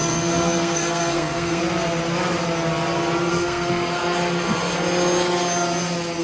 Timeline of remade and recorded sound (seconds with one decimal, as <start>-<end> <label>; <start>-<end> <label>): 0.0-1.6 remade; 1.6-3.3 recorded; 3.3-4.0 remade; 4.0-6.2 recorded